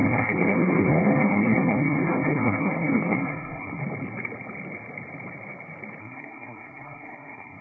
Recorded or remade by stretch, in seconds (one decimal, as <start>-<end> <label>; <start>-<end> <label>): 0.0-3.8 remade; 3.8-6.0 recorded; 6.0-7.6 remade